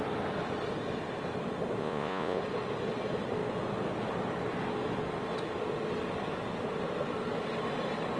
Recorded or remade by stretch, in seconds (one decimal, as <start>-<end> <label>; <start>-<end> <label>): 0.0-1.8 recorded; 1.8-2.4 remade; 2.4-8.2 recorded